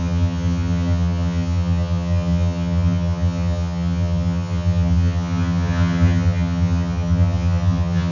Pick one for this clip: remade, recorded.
remade